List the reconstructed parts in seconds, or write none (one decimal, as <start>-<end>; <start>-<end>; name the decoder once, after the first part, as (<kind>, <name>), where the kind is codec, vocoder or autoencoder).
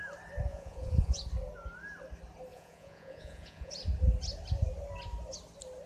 0.5-1.2 (vocoder, Vocos); 2.5-3.7